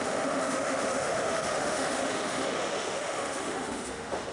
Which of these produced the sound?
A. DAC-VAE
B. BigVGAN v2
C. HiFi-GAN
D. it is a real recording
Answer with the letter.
A